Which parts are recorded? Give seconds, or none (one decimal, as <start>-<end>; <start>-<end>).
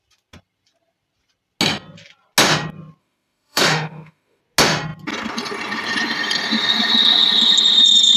0.0-3.0; 4.4-8.2